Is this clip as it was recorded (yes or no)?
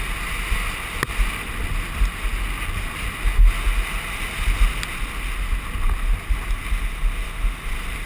yes